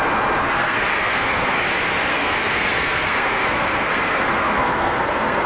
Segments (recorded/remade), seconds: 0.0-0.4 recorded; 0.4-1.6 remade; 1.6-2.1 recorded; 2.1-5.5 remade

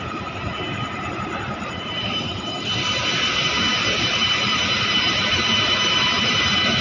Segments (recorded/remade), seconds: 0.0-6.8 remade

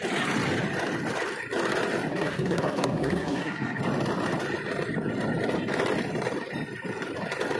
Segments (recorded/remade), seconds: 0.0-2.1 recorded; 2.1-3.8 remade; 3.8-7.6 recorded

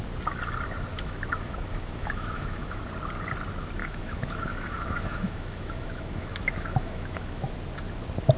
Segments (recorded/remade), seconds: 0.0-0.9 recorded; 0.9-2.8 remade; 2.8-3.8 recorded; 3.8-7.5 remade; 7.5-8.4 recorded